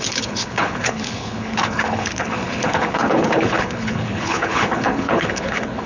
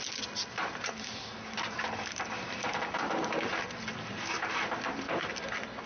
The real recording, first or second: second